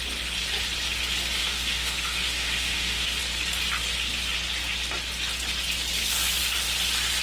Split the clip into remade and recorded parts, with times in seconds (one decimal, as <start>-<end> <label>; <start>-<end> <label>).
0.0-1.4 recorded; 1.4-3.2 remade; 3.2-7.2 recorded